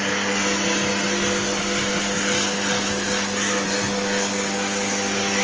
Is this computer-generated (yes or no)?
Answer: no